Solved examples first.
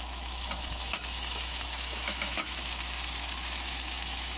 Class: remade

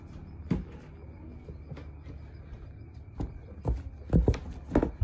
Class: recorded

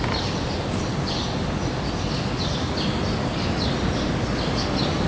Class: recorded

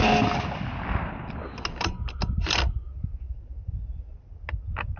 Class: recorded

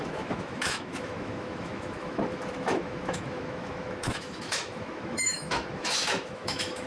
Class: remade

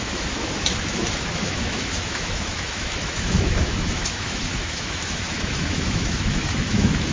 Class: remade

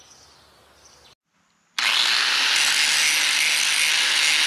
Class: recorded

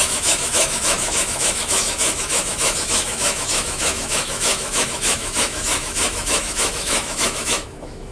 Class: remade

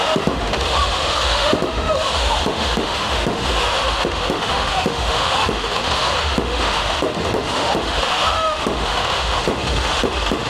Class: remade